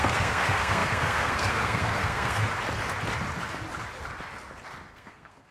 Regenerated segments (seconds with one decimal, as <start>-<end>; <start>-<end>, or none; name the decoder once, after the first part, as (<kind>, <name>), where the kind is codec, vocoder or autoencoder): 0.0-2.4 (codec, SNAC); 4.9-5.5